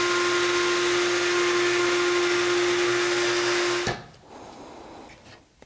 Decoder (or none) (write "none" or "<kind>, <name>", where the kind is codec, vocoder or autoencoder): none